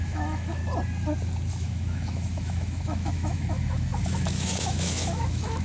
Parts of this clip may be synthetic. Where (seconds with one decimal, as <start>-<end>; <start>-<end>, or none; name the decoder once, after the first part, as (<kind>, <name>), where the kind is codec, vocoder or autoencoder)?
0.0-0.6 (autoencoder, DAC-VAE); 1.5-5.6